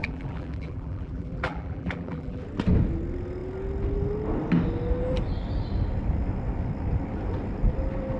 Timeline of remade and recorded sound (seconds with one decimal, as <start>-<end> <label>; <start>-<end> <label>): 0.0-2.4 remade; 2.4-8.2 recorded